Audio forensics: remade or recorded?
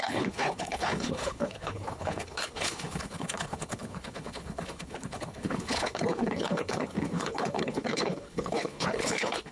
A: remade